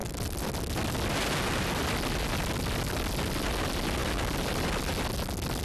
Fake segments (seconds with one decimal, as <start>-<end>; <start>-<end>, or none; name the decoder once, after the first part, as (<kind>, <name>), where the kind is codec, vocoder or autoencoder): none